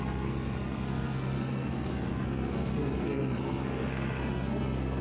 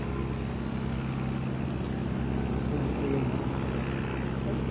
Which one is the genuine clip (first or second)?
second